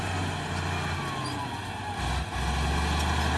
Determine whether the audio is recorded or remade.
recorded